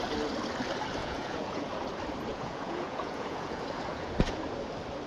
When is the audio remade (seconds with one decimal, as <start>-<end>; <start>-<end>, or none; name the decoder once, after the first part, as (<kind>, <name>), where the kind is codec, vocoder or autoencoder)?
1.0-1.7 (vocoder, Vocos); 2.3-4.1